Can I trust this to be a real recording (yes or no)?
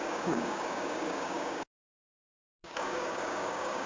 no